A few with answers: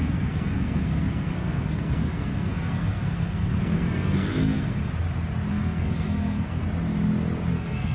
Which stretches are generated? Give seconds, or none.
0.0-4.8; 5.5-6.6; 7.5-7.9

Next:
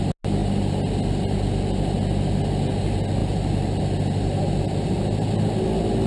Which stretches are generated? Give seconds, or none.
none

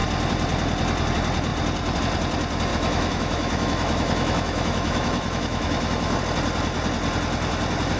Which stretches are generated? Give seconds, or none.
2.7-6.2

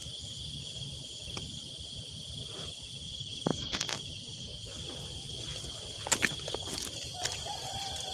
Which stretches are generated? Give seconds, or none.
none

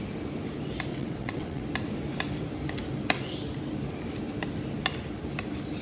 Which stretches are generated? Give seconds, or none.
0.9-1.6

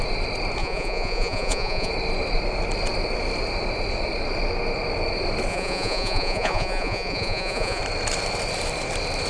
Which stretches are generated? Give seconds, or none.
0.6-1.9; 5.5-7.8